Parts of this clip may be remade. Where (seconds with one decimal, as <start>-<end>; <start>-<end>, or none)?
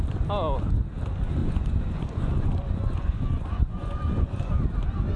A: 1.4-4.5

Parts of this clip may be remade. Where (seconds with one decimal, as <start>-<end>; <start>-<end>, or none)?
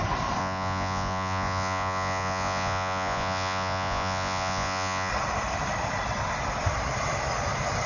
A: 0.4-5.1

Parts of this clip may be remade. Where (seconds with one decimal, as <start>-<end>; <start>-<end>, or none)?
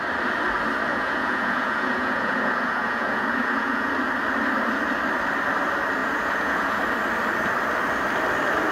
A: 0.9-3.9; 6.0-6.8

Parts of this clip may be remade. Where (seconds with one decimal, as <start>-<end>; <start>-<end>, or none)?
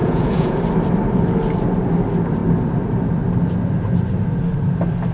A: 0.0-0.6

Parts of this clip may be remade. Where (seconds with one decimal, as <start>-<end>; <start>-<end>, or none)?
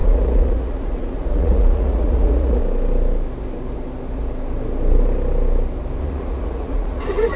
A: 0.0-2.6; 6.0-7.4